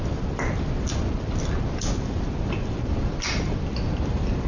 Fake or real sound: real